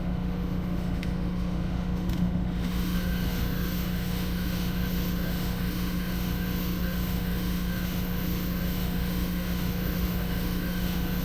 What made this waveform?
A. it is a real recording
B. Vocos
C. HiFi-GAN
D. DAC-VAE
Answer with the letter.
D